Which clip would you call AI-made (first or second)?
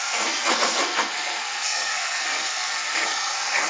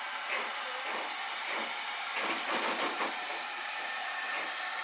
first